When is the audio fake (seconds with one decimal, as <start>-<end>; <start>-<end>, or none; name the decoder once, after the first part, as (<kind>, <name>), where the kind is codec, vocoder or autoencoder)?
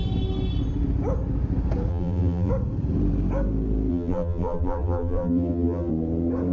1.9-2.5 (vocoder, BigVGAN v2); 3.9-5.9